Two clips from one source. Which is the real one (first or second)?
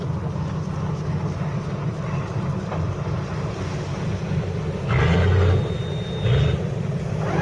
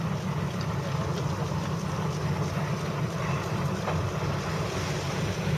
first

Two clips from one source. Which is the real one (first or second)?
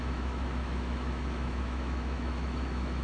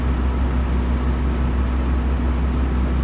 second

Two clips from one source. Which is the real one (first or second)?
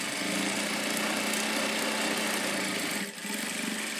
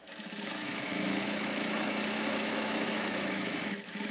first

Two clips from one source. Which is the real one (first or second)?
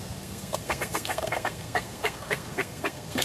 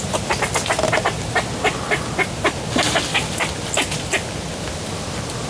second